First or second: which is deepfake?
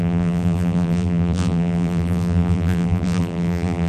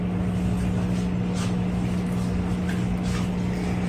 first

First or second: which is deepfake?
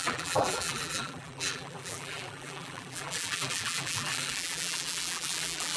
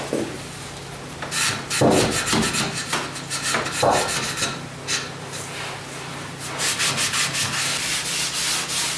first